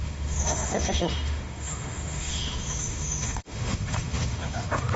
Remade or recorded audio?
remade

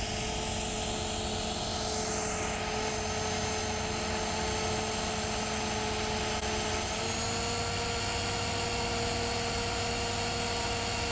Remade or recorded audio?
recorded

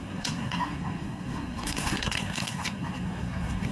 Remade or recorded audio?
remade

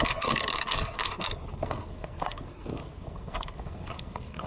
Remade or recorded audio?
remade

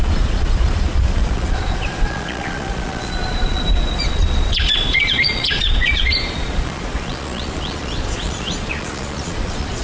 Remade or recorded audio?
remade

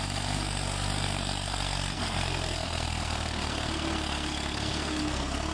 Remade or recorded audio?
remade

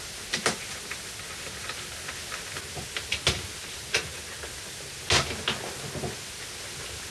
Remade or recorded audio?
recorded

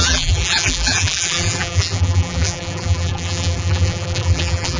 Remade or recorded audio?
remade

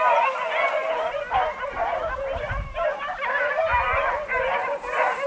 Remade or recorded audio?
recorded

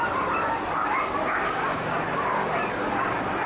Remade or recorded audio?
recorded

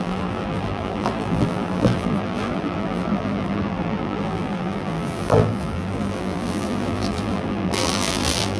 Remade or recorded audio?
remade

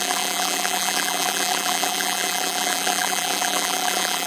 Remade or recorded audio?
remade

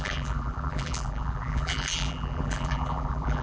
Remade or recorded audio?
remade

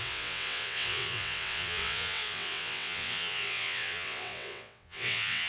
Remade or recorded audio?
remade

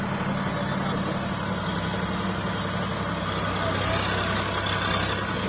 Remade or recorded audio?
recorded